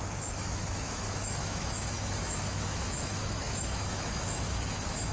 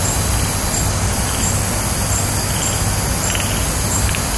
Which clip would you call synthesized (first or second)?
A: first